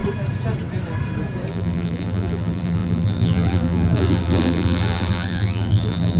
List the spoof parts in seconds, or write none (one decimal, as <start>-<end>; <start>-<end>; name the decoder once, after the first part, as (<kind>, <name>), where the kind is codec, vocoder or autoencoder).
1.5-6.2 (vocoder, BigVGAN v2)